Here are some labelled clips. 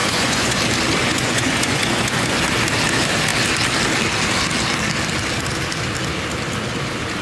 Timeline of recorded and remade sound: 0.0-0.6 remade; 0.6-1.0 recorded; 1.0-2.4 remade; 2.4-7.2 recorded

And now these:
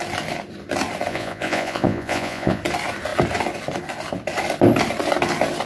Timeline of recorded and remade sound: 0.0-1.1 recorded; 1.1-2.6 remade; 2.6-5.7 recorded

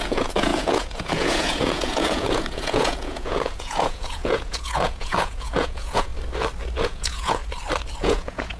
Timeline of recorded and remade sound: 0.0-6.1 remade; 6.1-6.8 recorded; 6.8-7.4 remade; 7.4-8.0 recorded; 8.0-8.6 remade

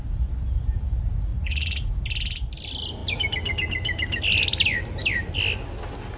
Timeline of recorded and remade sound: 0.0-1.3 recorded; 1.3-2.0 remade; 2.0-6.2 recorded